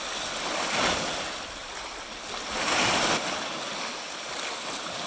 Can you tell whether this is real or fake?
real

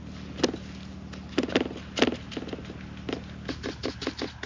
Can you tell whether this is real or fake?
real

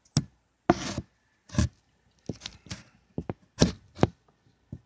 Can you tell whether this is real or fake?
real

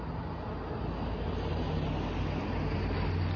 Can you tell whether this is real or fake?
real